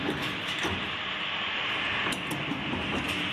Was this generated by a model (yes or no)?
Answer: no